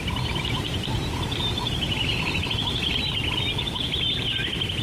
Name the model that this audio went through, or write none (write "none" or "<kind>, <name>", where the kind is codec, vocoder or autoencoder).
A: none